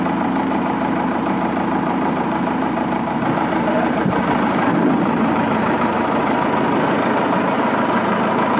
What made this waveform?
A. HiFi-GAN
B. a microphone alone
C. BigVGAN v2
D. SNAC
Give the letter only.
C